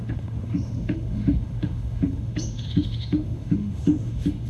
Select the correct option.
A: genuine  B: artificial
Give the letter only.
B